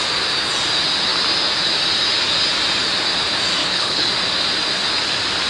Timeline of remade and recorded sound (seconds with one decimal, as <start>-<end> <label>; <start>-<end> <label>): 0.0-3.6 recorded; 3.6-4.1 remade; 4.1-5.5 recorded